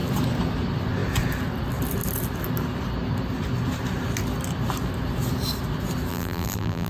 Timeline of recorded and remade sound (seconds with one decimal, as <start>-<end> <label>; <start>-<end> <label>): 0.0-6.1 recorded; 6.1-6.9 remade